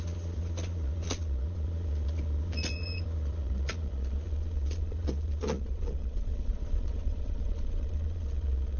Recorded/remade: remade